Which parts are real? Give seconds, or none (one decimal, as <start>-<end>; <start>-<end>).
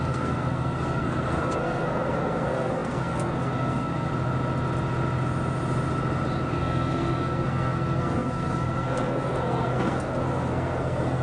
4.1-6.5